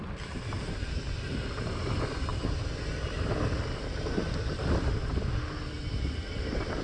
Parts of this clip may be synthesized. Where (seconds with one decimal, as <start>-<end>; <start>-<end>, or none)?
none